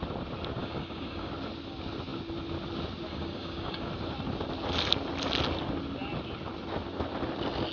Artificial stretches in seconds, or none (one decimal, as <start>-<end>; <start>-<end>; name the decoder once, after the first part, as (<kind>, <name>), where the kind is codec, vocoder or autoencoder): 0.6-1.3 (codec, DAC); 3.1-3.9